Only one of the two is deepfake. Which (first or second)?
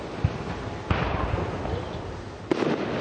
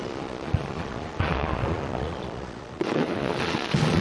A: second